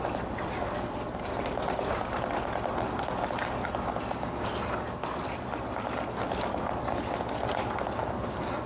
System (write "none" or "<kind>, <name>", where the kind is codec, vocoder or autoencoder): none